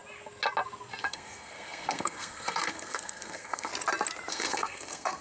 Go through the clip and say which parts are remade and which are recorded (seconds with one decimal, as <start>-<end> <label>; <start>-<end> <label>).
0.0-1.0 recorded; 1.0-3.7 remade; 3.7-4.3 recorded; 4.3-5.2 remade